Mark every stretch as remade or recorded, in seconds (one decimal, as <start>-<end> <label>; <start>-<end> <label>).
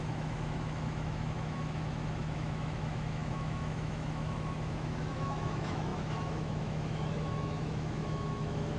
0.0-8.8 remade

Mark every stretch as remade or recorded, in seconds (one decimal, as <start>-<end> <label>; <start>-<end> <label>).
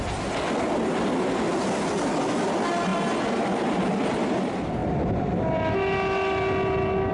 0.0-7.1 recorded